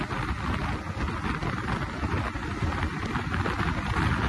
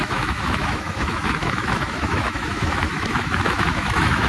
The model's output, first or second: second